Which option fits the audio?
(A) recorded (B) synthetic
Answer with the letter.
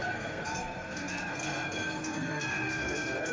B